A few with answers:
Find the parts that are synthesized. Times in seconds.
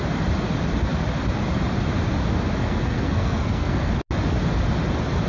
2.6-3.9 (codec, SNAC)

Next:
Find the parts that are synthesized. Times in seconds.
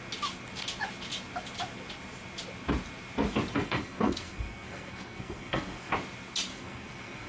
3.5-5.9 (codec, SNAC); 6.5-7.3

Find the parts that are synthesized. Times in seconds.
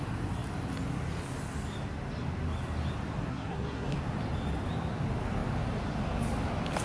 3.3-4.0 (codec, SNAC)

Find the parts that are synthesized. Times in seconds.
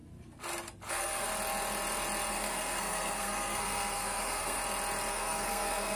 0.9-1.3 (codec, SNAC); 2.3-4.6; 5.1-6.0